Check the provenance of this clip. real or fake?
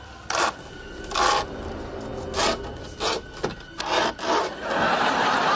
real